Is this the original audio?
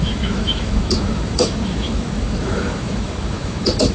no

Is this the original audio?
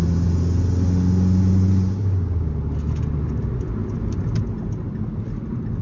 yes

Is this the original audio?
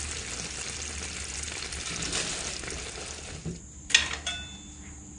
yes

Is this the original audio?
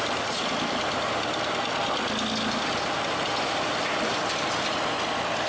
yes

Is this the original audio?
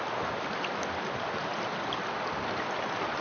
yes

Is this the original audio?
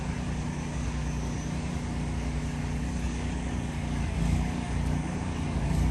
no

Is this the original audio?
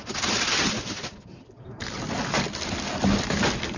no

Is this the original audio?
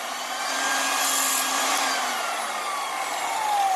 yes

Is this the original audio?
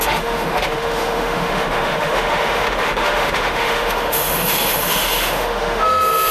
no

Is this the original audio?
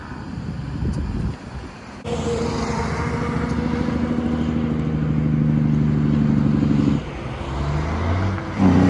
yes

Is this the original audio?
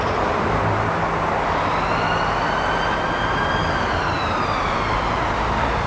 yes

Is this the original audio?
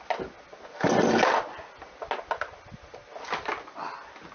yes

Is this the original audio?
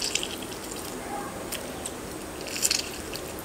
yes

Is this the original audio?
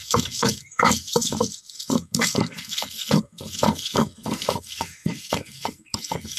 no